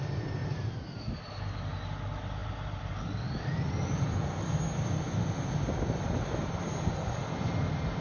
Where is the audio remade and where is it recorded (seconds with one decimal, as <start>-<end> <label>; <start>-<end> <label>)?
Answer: 0.0-8.0 recorded

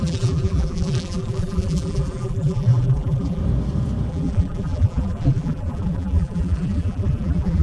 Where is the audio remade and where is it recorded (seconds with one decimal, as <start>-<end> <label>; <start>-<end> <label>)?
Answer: 0.0-3.4 remade; 3.4-4.1 recorded; 4.1-7.6 remade

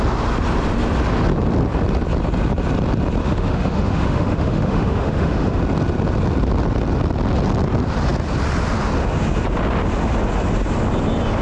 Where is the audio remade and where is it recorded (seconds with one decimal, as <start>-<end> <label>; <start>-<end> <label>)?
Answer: 0.0-3.2 recorded; 3.2-5.6 remade; 5.6-11.4 recorded

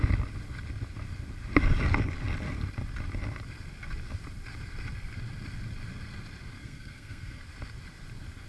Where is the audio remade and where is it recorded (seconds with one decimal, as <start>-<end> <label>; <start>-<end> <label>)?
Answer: 0.0-6.6 recorded; 6.6-7.4 remade; 7.4-8.5 recorded

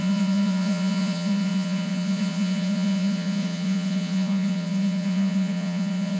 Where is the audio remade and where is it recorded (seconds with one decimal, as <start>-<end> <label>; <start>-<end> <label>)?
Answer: 0.0-6.2 remade

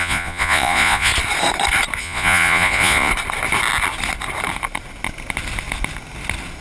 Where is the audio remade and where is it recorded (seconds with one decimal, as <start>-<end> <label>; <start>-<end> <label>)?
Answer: 0.0-1.1 remade; 1.1-2.0 recorded; 2.0-3.1 remade; 3.1-6.6 recorded